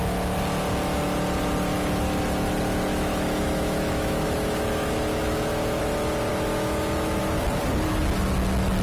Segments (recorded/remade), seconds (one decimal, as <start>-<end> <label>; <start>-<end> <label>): 0.0-2.9 recorded; 2.9-5.8 remade; 5.8-6.3 recorded; 6.3-7.2 remade; 7.2-8.8 recorded